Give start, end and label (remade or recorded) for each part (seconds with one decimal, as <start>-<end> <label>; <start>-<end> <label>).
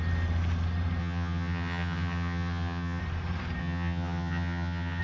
0.0-1.0 recorded; 1.0-3.0 remade; 3.0-3.6 recorded; 3.6-5.0 remade